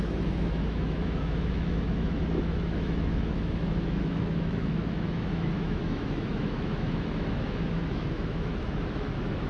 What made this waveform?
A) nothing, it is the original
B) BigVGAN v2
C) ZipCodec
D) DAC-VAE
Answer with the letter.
D